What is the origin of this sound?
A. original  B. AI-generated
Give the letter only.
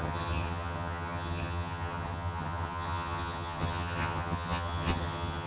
B